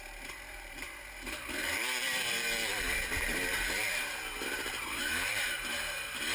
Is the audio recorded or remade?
remade